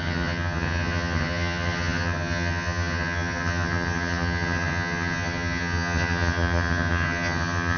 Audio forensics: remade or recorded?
remade